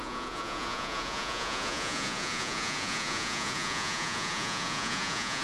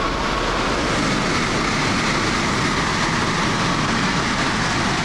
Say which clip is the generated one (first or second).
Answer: first